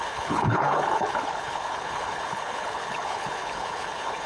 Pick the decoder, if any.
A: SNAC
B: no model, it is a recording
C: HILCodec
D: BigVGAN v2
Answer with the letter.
C